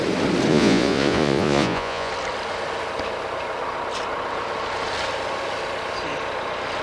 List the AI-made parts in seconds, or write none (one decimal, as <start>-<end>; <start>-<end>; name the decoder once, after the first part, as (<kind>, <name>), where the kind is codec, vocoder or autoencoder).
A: 0.5-2.1 (vocoder, Vocos)